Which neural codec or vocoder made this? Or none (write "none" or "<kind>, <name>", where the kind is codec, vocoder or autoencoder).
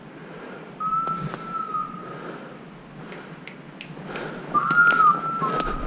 none